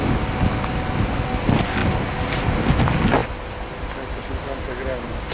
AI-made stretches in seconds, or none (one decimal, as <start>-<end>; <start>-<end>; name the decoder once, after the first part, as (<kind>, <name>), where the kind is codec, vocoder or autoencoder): none